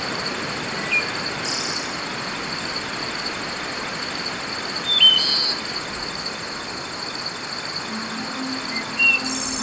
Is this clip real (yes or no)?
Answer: yes